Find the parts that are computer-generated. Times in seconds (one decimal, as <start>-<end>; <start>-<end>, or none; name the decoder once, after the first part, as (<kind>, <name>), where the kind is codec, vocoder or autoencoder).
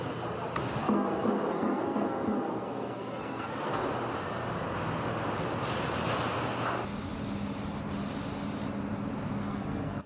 0.8-3.8 (codec, SNAC); 9.4-10.1